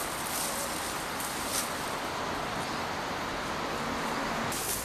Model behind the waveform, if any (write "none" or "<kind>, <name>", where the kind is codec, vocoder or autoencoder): none